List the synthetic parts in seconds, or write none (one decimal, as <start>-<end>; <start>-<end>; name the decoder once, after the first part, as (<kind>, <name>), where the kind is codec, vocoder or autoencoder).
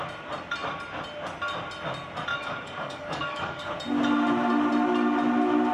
2.3-3.7 (codec, DAC)